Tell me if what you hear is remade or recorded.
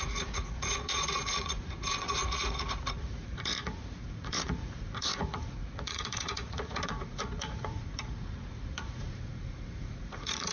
remade